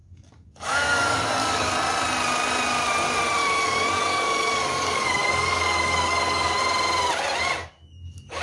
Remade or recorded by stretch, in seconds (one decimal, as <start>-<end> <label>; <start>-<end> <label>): 0.0-1.7 remade; 1.7-3.4 recorded; 3.4-6.6 remade; 6.6-7.6 recorded; 7.6-8.4 remade